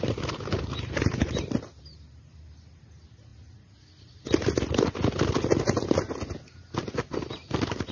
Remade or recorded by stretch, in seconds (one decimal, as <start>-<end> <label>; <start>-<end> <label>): 0.0-7.9 recorded